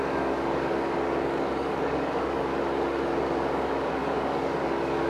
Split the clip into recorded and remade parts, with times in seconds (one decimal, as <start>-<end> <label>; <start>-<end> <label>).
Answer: 0.0-2.5 remade; 2.5-3.2 recorded; 3.2-5.1 remade